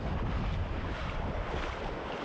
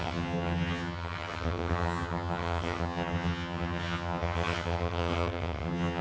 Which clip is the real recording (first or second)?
first